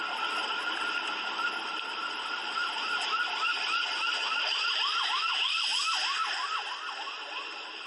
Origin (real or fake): real